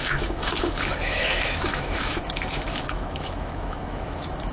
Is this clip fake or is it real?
fake